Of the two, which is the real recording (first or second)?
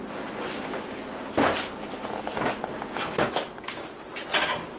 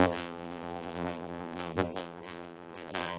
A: first